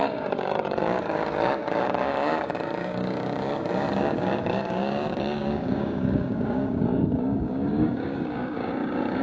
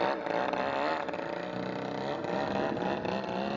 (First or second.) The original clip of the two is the second